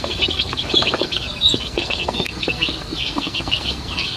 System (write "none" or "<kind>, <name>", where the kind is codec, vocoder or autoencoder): codec, SNAC